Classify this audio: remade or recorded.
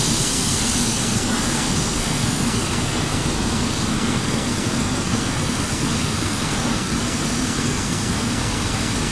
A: remade